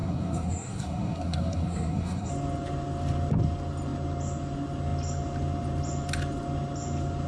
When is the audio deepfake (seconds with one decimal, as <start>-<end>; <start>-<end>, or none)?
0.0-2.3